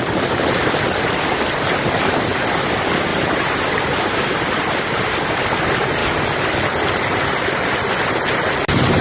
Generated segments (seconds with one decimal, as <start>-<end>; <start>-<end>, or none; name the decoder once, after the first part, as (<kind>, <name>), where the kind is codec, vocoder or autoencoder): none